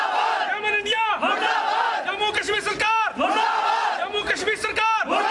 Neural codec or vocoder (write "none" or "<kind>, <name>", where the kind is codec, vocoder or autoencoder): none